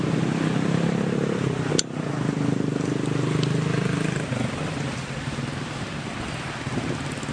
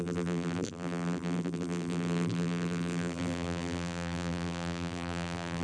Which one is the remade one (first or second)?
second